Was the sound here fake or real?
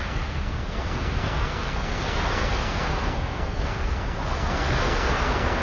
fake